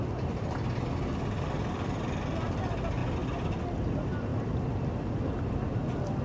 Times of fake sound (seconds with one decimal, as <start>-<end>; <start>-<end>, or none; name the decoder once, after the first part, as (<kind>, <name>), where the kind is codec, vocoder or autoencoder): none